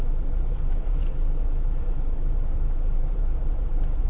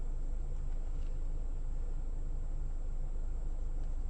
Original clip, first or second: second